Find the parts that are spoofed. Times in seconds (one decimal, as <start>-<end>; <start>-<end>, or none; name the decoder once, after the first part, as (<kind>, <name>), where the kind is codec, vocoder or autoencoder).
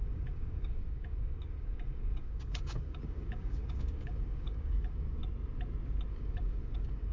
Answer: 0.0-5.2 (codec, DAC); 6.1-7.1